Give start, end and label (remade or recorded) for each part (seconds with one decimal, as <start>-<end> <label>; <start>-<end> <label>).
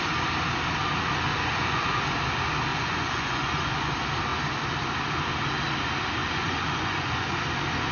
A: 0.0-1.3 recorded; 1.3-2.0 remade; 2.0-2.7 recorded; 2.7-3.9 remade; 3.9-6.2 recorded; 6.2-7.4 remade; 7.4-7.9 recorded